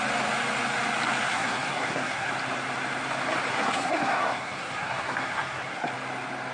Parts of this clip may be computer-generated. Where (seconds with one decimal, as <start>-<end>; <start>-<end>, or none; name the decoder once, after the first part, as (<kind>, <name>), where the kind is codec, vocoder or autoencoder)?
1.3-2.3 (codec, SNAC); 3.5-5.9